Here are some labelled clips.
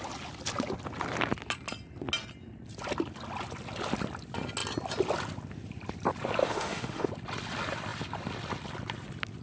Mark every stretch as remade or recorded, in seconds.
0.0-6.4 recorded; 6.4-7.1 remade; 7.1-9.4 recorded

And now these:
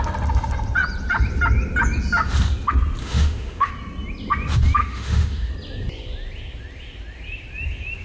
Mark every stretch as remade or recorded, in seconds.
0.0-3.0 recorded; 3.0-3.7 remade; 3.7-4.8 recorded; 4.8-5.5 remade; 5.5-8.0 recorded

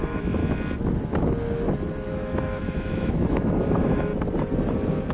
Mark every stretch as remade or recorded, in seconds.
0.0-0.4 remade; 0.4-2.1 recorded; 2.1-4.1 remade; 4.1-5.1 recorded

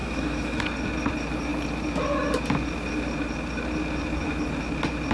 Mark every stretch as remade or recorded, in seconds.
0.0-0.6 remade; 0.6-5.1 recorded

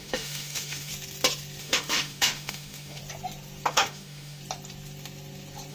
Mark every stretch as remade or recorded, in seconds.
0.0-0.9 remade; 0.9-1.6 recorded; 1.6-3.0 remade; 3.0-3.7 recorded; 3.7-4.4 remade; 4.4-5.7 recorded